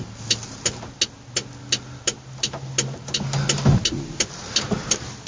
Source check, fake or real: real